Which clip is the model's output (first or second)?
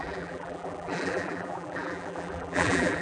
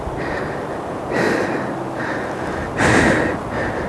first